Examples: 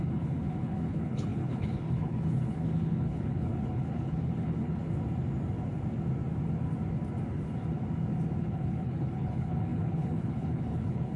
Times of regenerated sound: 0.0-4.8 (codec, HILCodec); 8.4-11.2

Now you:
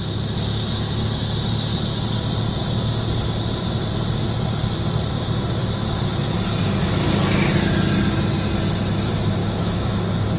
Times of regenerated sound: 9.4-10.0 (autoencoder, DAC-VAE)